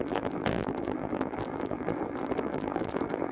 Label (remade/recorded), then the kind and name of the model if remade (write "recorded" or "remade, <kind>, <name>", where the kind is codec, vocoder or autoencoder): remade, vocoder, BigVGAN v2